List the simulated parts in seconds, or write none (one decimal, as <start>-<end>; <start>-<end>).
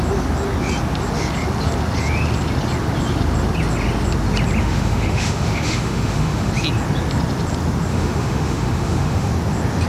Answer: 4.6-6.5; 7.9-9.3